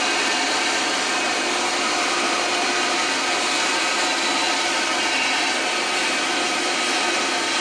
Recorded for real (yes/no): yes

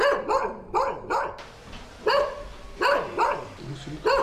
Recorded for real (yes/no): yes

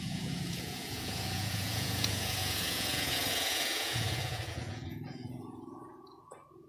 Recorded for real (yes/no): no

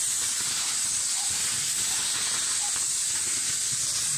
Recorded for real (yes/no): yes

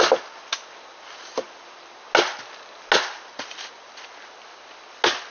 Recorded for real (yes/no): yes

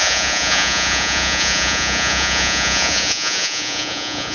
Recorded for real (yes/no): no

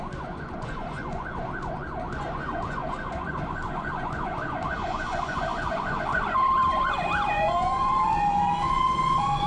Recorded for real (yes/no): no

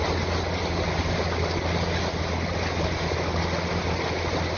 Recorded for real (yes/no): yes